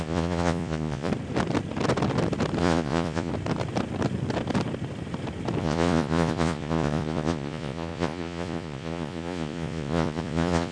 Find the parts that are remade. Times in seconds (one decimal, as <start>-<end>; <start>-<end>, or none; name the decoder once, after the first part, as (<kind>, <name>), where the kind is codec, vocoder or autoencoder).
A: 0.0-1.1 (vocoder, Vocos); 2.6-3.3; 5.6-10.7